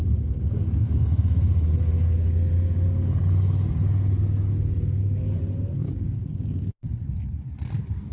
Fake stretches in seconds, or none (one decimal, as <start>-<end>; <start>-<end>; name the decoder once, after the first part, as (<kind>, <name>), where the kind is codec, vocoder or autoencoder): 0.0-1.2 (codec, DAC); 5.8-6.6